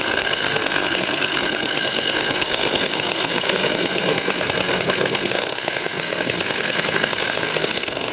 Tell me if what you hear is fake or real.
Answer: fake